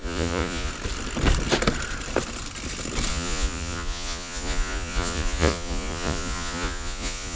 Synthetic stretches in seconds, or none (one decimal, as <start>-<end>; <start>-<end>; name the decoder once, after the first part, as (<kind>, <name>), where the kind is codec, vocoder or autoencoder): 0.0-0.7 (vocoder, Vocos); 3.1-7.4